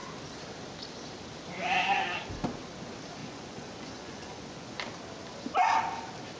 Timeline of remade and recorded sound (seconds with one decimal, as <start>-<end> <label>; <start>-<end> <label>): 0.0-3.2 recorded; 3.2-4.8 remade; 4.8-6.4 recorded